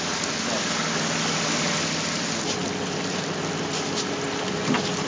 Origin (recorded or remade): recorded